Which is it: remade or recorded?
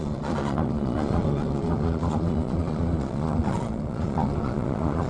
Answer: remade